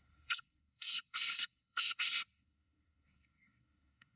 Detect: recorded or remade remade